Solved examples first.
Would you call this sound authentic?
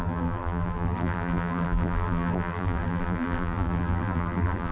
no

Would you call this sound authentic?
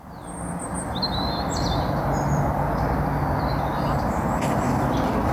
yes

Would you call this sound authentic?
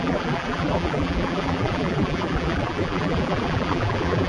no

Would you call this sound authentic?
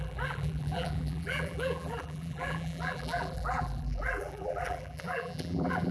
no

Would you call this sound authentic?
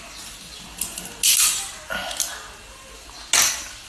yes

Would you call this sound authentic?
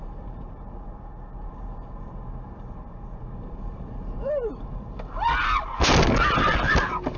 yes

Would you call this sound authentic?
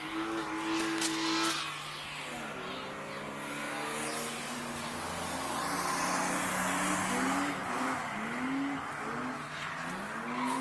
yes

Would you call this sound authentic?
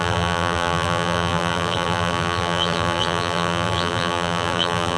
no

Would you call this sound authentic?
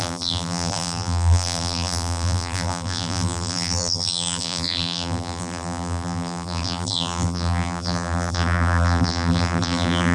no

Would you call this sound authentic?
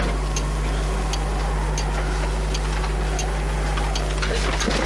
yes